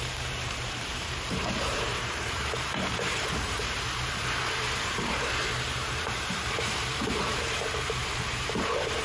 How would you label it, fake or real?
fake